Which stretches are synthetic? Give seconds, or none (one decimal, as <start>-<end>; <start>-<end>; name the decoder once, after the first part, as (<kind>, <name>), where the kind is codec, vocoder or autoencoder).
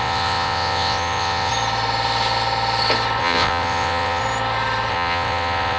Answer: 0.0-1.5 (vocoder, WaveNeXt); 3.2-4.2; 4.9-5.8